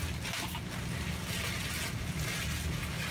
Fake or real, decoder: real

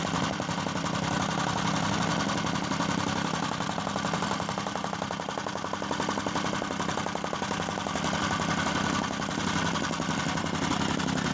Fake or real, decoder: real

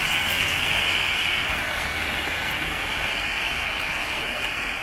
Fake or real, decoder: fake, codec, SNAC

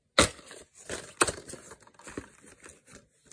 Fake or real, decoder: real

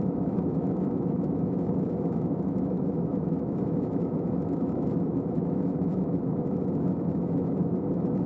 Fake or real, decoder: fake, autoencoder, DAC-VAE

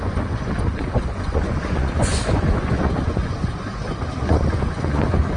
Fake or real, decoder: fake, vocoder, Vocos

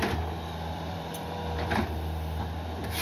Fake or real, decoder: fake, vocoder, BigVGAN v2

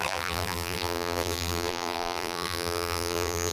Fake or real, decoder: fake, vocoder, BigVGAN v2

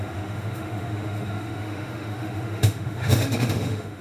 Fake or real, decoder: fake, autoencoder, DAC-VAE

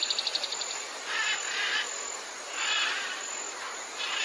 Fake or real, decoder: real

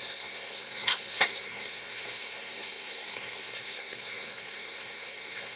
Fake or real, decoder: fake, codec, SNAC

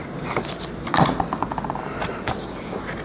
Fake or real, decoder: real